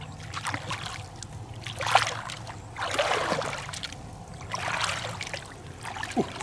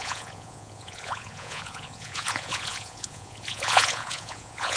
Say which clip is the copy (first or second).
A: second